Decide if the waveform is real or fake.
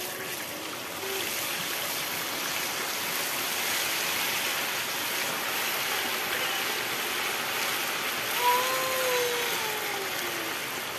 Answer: real